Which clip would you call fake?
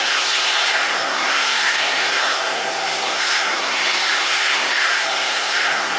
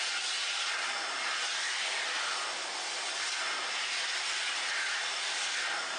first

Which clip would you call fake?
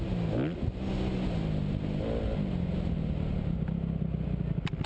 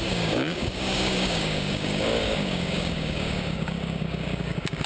second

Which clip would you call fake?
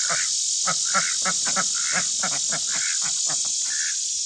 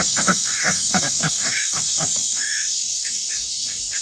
second